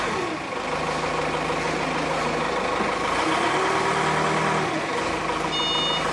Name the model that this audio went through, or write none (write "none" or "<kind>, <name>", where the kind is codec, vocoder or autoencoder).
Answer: none